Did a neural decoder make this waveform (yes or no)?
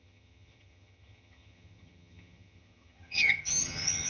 yes